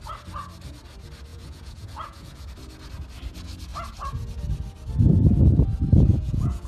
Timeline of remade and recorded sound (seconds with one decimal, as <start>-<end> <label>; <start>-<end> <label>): 0.0-1.3 recorded; 1.3-2.5 remade; 2.5-6.1 recorded; 6.1-6.7 remade